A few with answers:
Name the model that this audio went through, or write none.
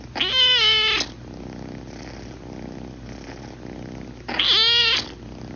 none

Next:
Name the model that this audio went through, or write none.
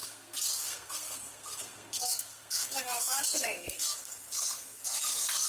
codec, SNAC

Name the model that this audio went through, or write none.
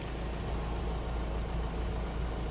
none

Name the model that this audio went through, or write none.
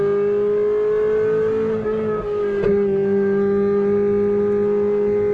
none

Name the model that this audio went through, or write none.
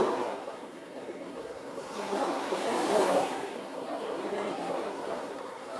codec, SNAC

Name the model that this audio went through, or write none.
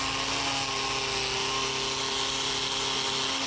none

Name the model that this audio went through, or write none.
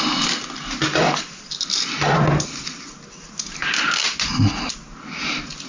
none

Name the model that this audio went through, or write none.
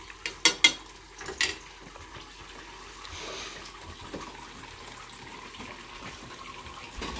none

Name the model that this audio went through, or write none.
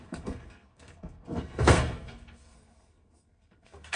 codec, SNAC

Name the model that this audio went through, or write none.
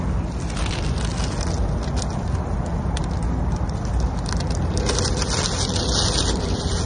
none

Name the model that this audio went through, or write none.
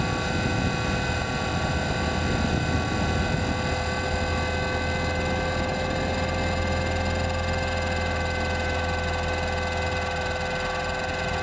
none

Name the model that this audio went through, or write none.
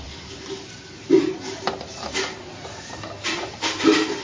vocoder, BigVGAN v2